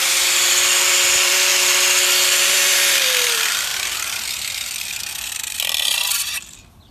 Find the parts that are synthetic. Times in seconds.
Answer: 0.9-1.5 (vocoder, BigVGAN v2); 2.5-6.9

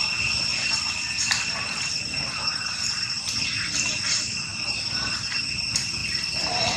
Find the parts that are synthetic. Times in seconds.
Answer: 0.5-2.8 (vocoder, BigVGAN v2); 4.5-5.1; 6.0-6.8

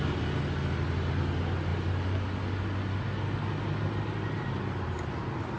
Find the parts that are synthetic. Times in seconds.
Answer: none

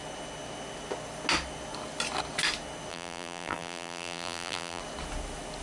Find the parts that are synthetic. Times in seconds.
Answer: 2.9-4.8 (vocoder, BigVGAN v2)

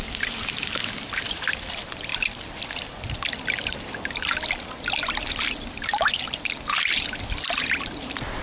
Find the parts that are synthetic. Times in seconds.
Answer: none

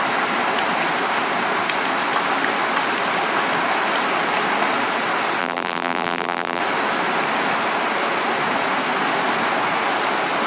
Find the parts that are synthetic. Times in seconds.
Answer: 5.4-6.6 (vocoder, BigVGAN v2)

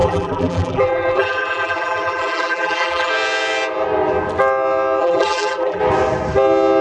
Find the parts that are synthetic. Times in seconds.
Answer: 0.0-3.1 (vocoder, BigVGAN v2); 5.0-5.8

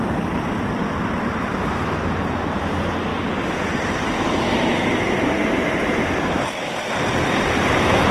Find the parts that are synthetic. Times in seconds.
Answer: 0.0-3.1 (vocoder, BigVGAN v2); 3.7-8.1